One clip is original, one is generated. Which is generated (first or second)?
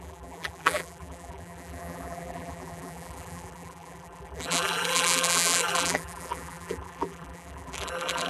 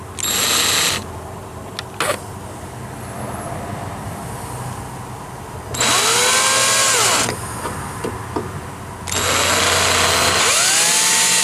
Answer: first